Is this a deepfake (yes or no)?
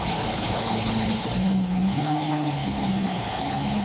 yes